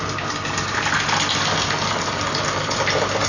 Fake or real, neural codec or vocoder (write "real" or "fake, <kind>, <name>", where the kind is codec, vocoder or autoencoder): real